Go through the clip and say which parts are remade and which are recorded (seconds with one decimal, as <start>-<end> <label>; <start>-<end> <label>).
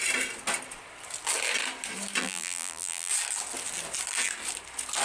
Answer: 0.0-2.2 recorded; 2.2-3.1 remade; 3.1-5.0 recorded